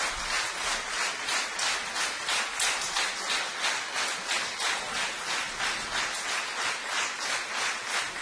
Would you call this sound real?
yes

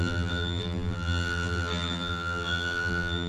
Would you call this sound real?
no